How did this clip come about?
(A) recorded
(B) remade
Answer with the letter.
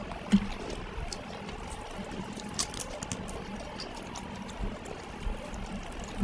A